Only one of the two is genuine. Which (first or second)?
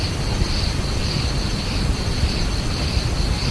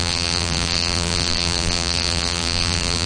first